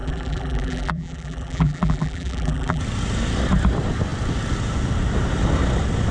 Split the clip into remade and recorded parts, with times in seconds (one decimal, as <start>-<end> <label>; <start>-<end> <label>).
0.0-2.8 remade; 2.8-6.1 recorded